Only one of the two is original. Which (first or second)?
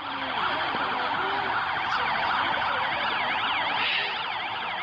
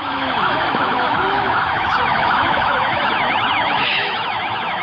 first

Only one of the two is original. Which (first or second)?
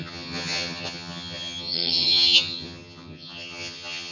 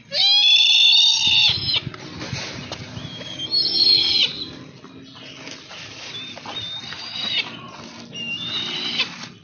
second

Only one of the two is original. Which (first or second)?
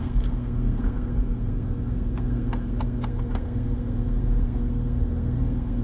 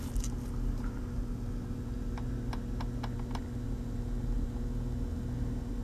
second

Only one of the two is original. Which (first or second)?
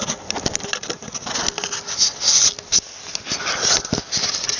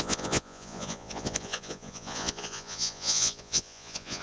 first